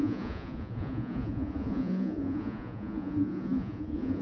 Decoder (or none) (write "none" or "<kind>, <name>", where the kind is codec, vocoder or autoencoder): vocoder, Vocos